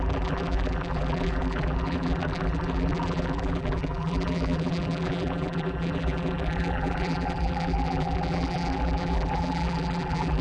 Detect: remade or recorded remade